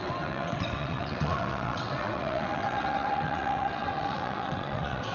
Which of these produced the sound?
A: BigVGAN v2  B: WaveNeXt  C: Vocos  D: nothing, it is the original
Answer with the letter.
B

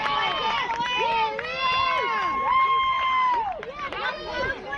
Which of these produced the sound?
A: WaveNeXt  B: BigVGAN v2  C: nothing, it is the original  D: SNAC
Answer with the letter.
C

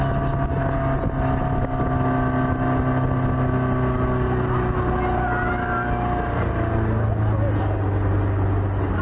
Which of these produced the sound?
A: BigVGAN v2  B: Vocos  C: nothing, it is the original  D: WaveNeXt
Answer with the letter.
C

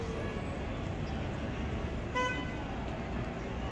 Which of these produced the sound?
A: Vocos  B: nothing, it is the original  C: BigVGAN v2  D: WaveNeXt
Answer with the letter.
B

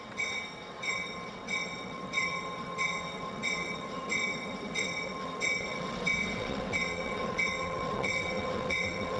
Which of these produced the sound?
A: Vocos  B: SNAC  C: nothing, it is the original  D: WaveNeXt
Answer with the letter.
D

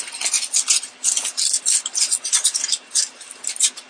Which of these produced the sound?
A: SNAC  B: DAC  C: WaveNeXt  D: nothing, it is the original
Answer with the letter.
D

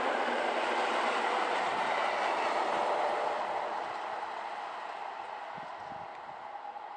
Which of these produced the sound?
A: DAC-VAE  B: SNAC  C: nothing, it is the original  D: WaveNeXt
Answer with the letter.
C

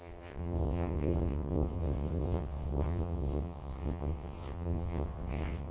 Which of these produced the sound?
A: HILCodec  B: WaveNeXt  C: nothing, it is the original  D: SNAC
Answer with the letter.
B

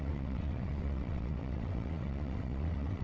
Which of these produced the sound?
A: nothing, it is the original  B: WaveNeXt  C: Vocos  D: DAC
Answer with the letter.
B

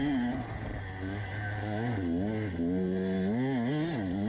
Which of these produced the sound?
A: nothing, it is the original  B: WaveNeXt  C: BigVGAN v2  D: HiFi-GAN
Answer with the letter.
A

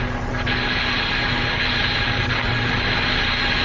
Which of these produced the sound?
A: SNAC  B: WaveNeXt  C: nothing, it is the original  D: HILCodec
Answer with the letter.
C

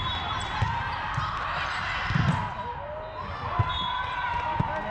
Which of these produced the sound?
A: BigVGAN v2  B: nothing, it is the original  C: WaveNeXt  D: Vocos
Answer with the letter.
B